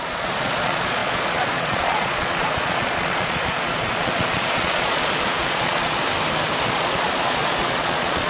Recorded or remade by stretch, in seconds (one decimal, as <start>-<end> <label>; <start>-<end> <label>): 0.0-6.0 remade; 6.0-6.6 recorded; 6.6-8.3 remade